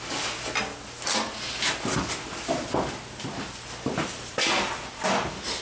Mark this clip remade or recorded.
recorded